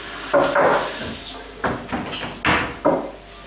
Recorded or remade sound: recorded